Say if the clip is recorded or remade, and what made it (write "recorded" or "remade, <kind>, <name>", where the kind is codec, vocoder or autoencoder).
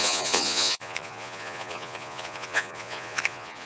remade, vocoder, Vocos